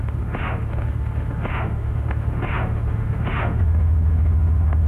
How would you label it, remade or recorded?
remade